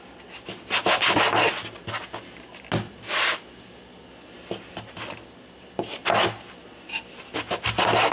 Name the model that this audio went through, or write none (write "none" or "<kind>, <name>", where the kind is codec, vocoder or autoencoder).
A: none